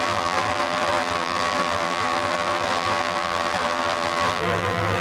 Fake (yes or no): yes